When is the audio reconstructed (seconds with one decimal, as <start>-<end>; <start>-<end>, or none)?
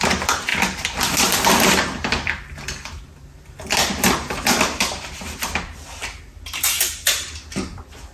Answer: 0.0-6.0; 7.0-8.1